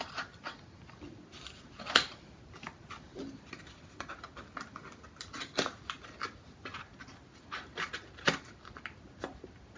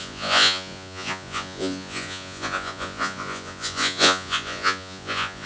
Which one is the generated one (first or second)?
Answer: second